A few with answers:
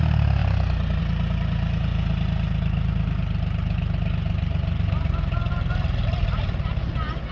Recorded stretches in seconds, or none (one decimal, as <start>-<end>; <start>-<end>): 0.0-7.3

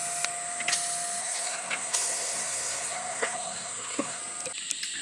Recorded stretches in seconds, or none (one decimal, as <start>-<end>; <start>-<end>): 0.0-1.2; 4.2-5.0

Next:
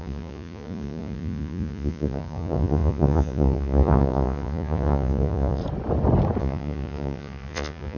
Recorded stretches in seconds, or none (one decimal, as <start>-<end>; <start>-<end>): 5.6-6.4